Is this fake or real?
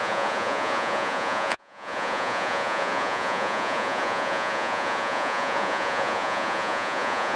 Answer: fake